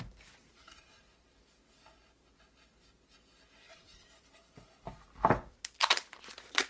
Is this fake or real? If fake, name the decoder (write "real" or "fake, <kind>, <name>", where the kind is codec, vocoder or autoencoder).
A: real